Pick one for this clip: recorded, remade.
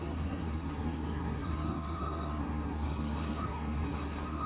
remade